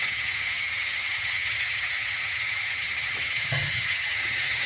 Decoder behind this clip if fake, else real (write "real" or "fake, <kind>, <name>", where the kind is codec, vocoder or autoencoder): fake, vocoder, HiFi-GAN